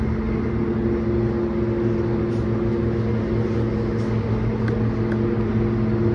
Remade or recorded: recorded